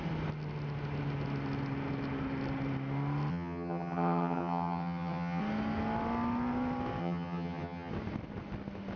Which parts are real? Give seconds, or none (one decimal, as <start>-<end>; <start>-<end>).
0.0-3.3; 5.4-7.0; 7.9-9.0